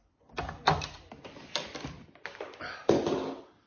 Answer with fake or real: real